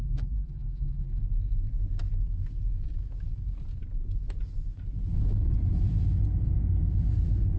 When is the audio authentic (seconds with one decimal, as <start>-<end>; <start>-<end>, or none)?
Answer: 1.2-7.6